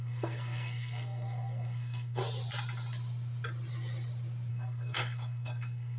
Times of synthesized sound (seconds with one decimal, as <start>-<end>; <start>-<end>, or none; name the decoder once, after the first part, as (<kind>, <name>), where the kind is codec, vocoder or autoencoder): 0.0-2.2 (codec, SNAC); 4.5-6.0